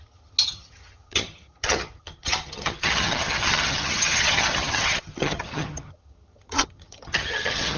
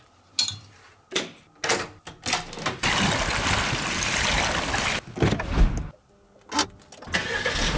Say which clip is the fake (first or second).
first